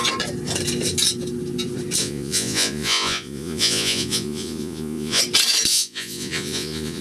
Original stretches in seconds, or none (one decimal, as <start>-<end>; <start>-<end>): 0.0-2.0; 5.2-5.7